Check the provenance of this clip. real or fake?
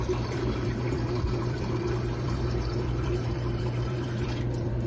fake